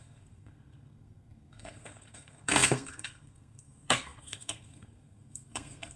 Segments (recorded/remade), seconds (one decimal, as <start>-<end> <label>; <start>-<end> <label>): 0.0-6.0 remade